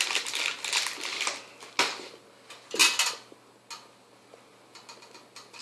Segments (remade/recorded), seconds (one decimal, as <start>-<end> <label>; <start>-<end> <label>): 0.0-5.6 recorded